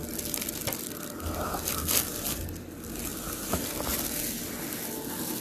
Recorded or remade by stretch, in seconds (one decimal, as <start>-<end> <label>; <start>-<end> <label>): 0.0-5.4 recorded